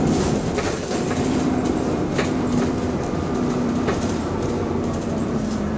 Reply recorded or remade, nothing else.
remade